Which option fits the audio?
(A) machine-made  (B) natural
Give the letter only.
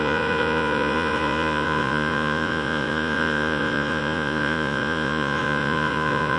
A